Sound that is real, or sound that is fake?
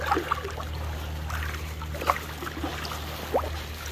real